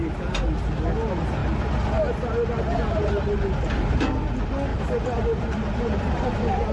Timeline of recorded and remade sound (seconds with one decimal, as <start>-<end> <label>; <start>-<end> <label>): 0.0-6.7 recorded